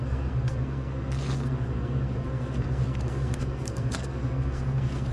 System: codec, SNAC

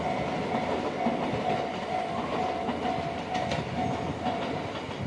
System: none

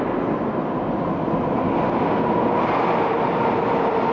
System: none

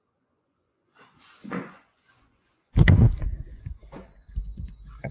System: vocoder, Vocos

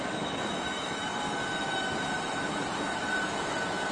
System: autoencoder, DAC-VAE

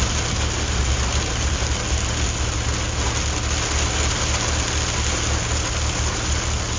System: none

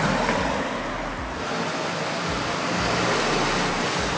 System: none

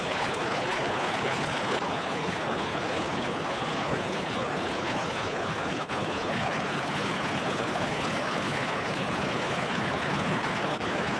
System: codec, HILCodec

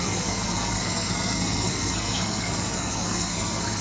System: codec, SNAC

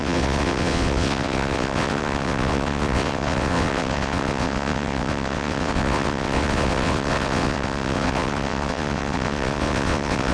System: vocoder, WaveNeXt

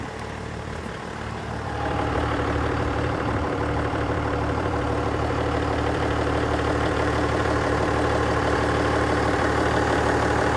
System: vocoder, BigVGAN v2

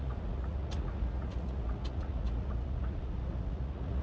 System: vocoder, Vocos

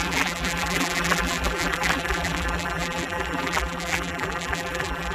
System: vocoder, BigVGAN v2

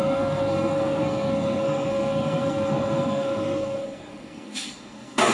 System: codec, SNAC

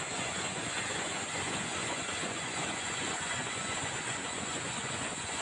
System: vocoder, Vocos